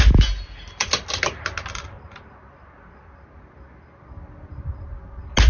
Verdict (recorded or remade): recorded